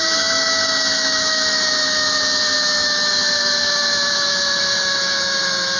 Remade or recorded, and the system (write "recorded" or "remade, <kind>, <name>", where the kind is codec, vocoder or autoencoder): remade, autoencoder, DAC-VAE